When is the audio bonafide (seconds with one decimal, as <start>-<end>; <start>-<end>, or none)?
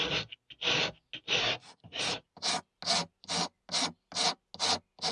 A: 0.0-1.4; 2.0-5.1